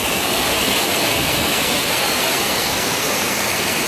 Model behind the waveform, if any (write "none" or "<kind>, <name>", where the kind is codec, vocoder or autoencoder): codec, SNAC